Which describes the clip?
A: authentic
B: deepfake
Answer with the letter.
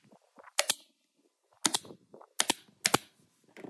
A